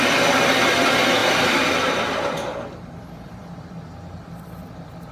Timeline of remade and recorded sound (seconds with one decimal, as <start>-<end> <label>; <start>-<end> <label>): 0.0-5.1 recorded